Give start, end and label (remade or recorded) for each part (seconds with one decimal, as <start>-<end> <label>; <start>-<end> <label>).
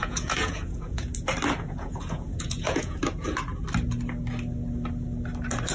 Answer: 0.0-1.1 remade; 1.1-1.6 recorded; 1.6-3.0 remade; 3.0-5.7 recorded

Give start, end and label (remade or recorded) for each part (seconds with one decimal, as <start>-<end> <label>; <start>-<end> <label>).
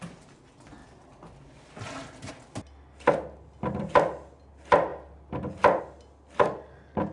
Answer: 0.0-7.1 recorded